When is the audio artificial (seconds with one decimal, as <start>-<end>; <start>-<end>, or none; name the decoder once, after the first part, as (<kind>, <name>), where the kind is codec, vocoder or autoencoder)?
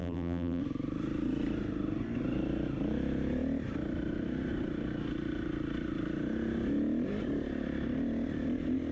0.0-0.6 (vocoder, BigVGAN v2)